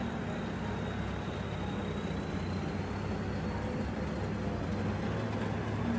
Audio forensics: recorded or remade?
recorded